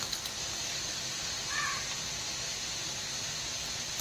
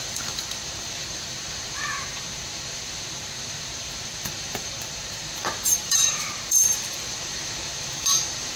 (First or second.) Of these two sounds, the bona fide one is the first